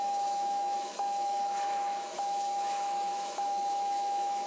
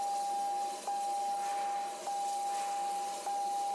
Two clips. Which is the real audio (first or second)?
second